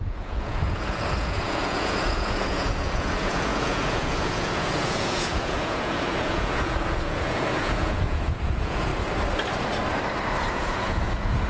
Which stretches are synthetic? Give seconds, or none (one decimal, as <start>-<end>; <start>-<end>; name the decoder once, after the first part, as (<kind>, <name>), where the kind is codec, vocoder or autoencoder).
0.0-8.9 (vocoder, Vocos); 10.5-11.5